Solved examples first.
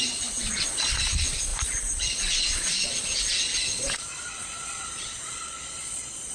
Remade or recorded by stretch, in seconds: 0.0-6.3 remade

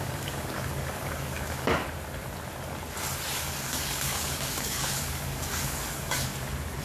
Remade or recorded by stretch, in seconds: 0.0-1.8 remade; 1.8-3.4 recorded; 3.4-6.3 remade; 6.3-6.8 recorded

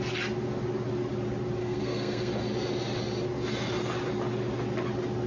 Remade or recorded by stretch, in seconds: 0.0-1.6 recorded; 1.6-2.3 remade; 2.3-5.3 recorded